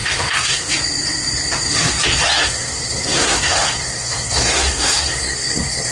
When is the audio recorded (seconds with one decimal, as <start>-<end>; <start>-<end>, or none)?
0.7-2.4